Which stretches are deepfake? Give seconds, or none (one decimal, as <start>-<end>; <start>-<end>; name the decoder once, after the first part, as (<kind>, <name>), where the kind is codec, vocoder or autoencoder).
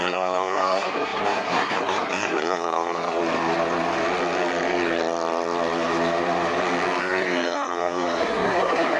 0.0-3.2 (codec, SNAC); 7.0-9.0